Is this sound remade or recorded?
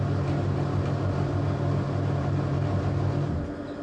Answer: recorded